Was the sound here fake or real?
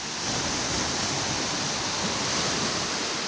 real